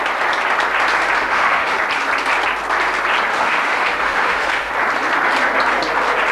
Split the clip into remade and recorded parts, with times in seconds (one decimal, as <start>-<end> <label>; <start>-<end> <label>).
0.0-1.2 recorded; 1.2-1.8 remade; 1.8-3.3 recorded; 3.3-4.7 remade; 4.7-6.3 recorded